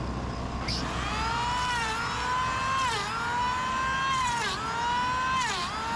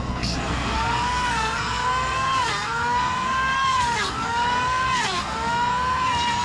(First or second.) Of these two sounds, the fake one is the second